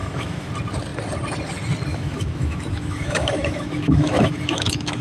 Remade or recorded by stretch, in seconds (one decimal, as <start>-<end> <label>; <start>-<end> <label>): 0.0-0.5 remade; 0.5-1.9 recorded; 1.9-5.0 remade